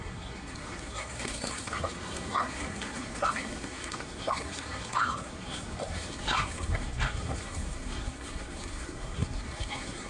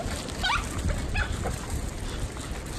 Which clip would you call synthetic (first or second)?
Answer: first